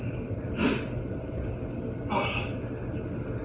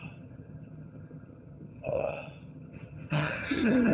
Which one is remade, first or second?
second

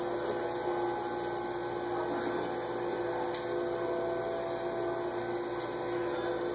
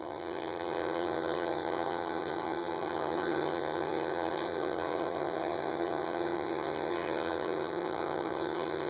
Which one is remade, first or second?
second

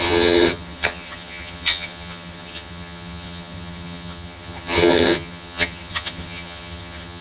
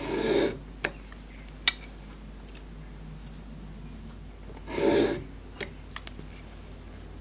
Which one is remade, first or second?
first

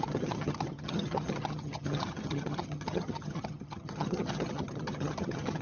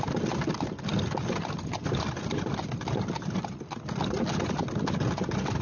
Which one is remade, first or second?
first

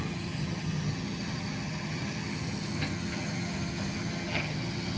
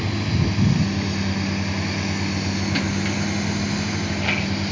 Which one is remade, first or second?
first